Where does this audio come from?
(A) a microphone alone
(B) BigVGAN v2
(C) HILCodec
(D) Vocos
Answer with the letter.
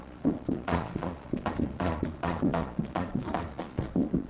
D